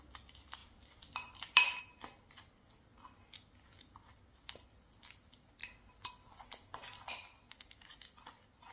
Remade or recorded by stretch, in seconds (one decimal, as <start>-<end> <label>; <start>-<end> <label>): 0.0-0.6 recorded; 0.6-1.8 remade; 1.8-8.7 recorded